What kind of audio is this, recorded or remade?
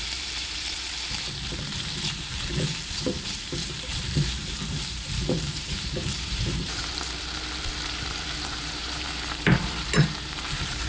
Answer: remade